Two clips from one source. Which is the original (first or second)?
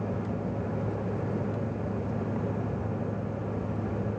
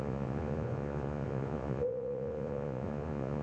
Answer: first